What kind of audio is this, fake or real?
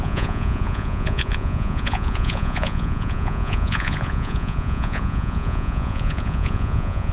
fake